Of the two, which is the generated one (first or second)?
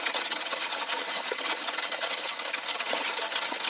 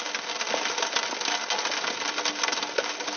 first